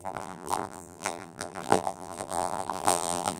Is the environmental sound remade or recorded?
remade